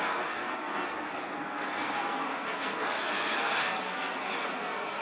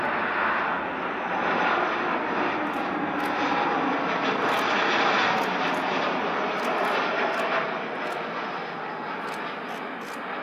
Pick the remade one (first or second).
first